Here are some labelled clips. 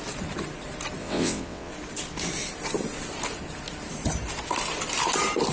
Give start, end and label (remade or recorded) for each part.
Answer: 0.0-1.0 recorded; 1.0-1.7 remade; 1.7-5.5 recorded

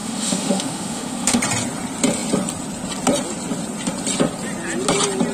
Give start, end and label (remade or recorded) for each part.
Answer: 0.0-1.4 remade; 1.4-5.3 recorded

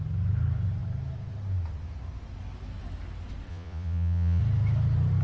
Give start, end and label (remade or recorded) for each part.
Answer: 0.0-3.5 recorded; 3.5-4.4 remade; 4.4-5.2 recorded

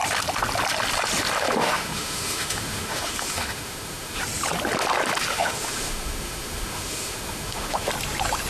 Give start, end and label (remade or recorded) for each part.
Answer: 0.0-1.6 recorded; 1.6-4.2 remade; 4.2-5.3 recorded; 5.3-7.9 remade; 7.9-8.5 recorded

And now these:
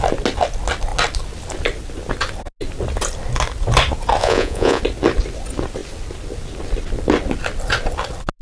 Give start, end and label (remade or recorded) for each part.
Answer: 0.0-4.2 recorded; 4.2-4.8 remade; 4.8-8.4 recorded